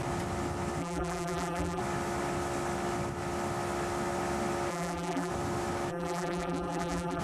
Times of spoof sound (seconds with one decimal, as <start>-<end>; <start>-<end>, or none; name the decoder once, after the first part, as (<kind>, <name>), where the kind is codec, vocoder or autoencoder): 0.8-1.8 (vocoder, BigVGAN v2); 4.7-5.3; 5.9-7.2

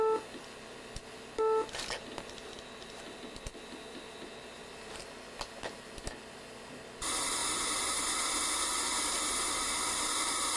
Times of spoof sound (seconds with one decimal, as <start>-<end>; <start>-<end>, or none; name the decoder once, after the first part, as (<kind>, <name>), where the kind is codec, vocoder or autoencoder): 7.4-8.1 (vocoder, BigVGAN v2)

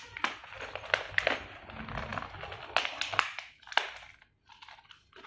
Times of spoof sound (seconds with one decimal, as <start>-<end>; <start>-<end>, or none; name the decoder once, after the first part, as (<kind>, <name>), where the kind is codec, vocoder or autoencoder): none

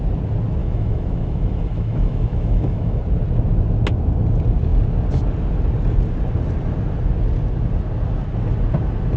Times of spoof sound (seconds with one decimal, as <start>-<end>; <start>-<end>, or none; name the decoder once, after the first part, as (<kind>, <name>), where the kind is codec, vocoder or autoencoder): 0.6-3.0 (autoencoder, DAC-VAE)

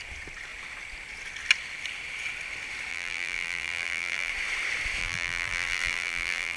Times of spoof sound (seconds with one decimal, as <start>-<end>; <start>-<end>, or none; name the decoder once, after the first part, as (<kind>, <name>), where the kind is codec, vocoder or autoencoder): 2.9-4.3 (vocoder, BigVGAN v2); 5.0-6.6

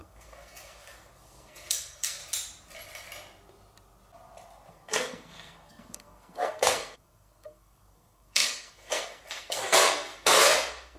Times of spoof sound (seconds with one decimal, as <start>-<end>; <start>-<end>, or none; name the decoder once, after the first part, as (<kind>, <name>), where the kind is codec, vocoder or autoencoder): 0.0-2.2 (codec, SNAC); 4.7-11.0

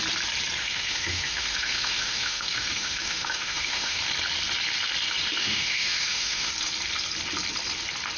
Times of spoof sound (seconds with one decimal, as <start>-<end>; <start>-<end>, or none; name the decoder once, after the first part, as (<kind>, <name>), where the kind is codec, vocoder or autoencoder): 0.6-4.0 (autoencoder, DAC-VAE); 5.4-6.5

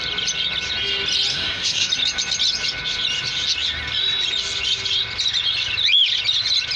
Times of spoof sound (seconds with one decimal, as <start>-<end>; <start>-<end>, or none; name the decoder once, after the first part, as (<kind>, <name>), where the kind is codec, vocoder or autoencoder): 1.3-1.9 (codec, SNAC)